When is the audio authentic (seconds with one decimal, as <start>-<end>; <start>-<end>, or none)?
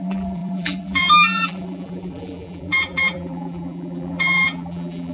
none